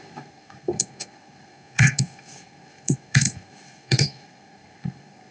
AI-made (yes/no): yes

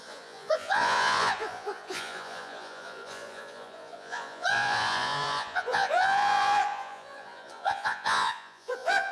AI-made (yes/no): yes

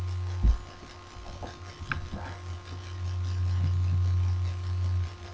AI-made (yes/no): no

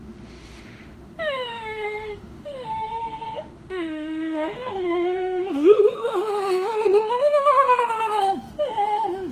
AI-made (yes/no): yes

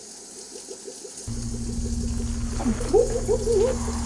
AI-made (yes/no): no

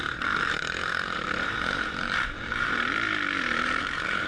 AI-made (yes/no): yes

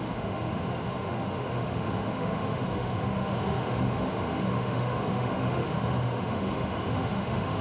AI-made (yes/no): yes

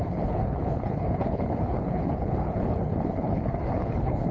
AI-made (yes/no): yes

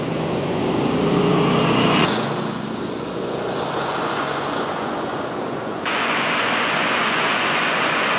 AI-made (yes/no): yes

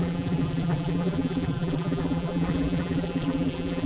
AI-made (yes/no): yes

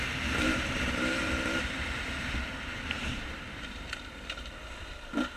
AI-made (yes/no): yes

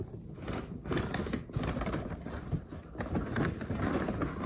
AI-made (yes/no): no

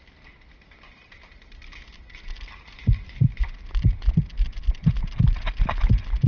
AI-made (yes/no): no